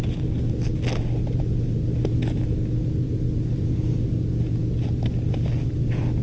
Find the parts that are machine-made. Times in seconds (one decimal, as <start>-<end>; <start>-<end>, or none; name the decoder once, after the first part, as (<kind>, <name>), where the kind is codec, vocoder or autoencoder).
none